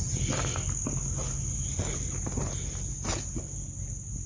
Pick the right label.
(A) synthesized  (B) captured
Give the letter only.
B